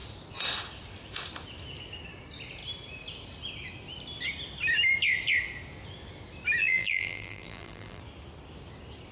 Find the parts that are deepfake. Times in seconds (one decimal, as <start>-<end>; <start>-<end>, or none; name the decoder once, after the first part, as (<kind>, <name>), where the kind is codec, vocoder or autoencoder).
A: 6.6-8.0 (vocoder, BigVGAN v2)